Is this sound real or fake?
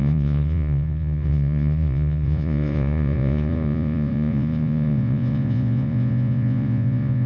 fake